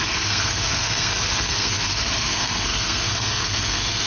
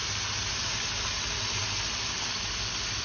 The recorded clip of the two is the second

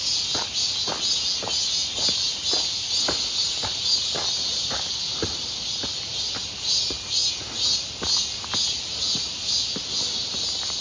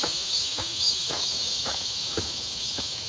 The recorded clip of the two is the first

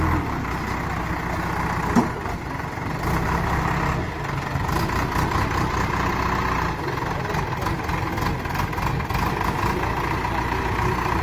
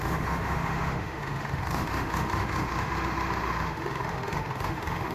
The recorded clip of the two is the first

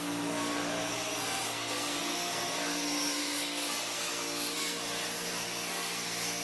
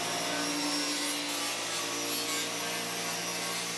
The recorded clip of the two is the second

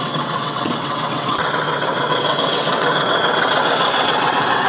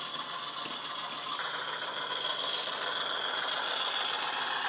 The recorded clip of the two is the second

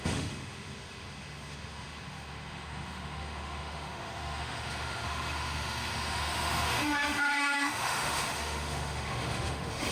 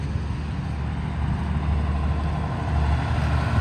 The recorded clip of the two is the second